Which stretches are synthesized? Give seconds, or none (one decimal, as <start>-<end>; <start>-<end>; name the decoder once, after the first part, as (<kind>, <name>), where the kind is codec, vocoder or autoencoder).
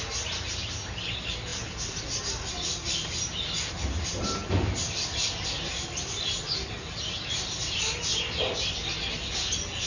none